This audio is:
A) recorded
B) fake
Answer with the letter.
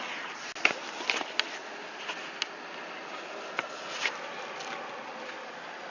A